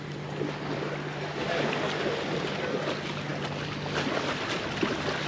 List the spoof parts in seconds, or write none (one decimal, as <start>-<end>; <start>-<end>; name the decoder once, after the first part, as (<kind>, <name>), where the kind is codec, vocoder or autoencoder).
none